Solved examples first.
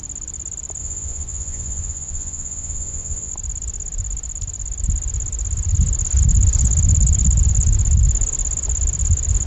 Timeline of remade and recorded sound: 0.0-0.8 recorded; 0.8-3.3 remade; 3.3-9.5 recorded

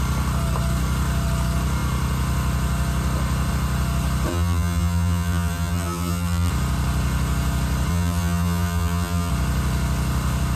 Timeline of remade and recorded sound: 0.0-4.3 recorded; 4.3-6.5 remade; 6.5-7.9 recorded; 7.9-9.3 remade; 9.3-10.6 recorded

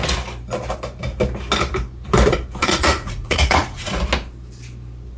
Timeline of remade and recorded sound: 0.0-2.6 recorded; 2.6-4.0 remade; 4.0-5.2 recorded

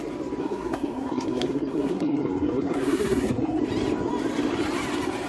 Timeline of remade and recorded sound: 0.0-0.4 recorded; 0.4-3.6 remade; 3.6-5.3 recorded